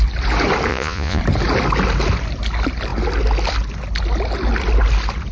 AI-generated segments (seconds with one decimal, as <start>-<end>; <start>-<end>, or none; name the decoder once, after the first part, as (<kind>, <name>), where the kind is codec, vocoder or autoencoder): 0.7-1.2 (vocoder, Vocos)

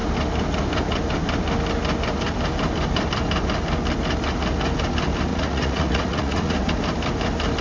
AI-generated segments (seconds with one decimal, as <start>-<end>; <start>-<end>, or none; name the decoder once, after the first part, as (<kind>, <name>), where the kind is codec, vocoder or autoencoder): 5.3-6.7 (vocoder, Vocos)

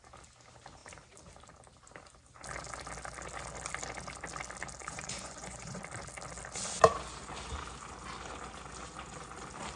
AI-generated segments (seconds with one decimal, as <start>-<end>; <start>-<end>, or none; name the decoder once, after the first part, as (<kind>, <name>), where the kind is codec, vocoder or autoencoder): 4.8-5.8 (vocoder, Vocos)

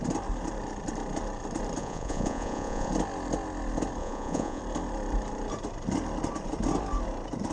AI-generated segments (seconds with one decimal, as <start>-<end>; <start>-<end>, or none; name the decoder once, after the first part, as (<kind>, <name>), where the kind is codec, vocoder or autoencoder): 1.8-2.9 (vocoder, Vocos); 4.0-4.6

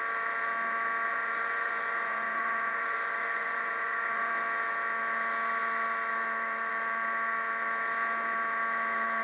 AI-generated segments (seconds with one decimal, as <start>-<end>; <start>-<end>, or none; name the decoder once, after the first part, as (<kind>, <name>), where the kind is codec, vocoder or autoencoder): 1.1-4.3 (vocoder, Vocos)